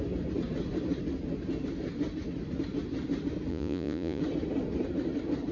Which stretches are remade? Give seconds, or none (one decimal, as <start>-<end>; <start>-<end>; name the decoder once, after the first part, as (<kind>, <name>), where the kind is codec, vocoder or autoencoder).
3.5-4.2 (vocoder, Vocos)